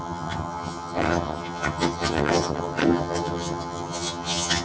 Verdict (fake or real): fake